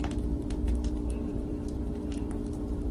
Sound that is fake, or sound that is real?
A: fake